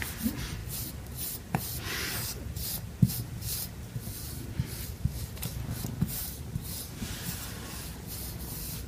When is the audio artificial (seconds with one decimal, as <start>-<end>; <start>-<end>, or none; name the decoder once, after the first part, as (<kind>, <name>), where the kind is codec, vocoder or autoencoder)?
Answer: 6.2-7.4 (vocoder, BigVGAN v2)